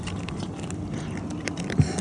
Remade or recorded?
recorded